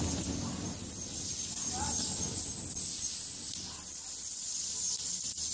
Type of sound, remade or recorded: recorded